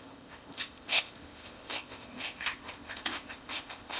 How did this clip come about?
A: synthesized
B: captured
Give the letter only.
A